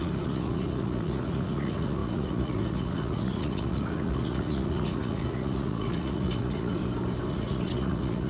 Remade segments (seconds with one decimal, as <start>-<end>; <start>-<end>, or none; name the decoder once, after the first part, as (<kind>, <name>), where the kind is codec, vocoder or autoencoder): 0.0-6.8 (vocoder, Vocos); 7.3-8.3